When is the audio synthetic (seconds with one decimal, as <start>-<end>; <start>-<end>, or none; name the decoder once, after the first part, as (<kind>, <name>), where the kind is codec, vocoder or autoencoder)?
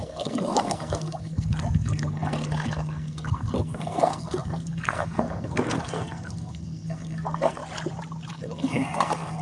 0.0-7.6 (codec, SNAC); 8.3-9.4